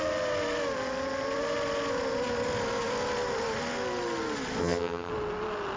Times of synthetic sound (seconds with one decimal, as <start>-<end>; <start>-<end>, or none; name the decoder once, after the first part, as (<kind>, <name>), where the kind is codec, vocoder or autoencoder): 4.6-5.1 (vocoder, HiFi-GAN)